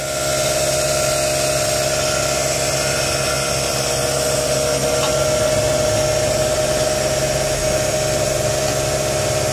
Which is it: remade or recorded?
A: recorded